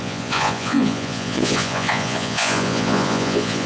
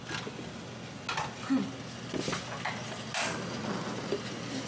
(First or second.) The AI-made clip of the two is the first